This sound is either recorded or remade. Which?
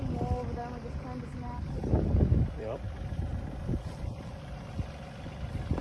recorded